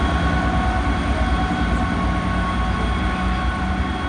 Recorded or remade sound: recorded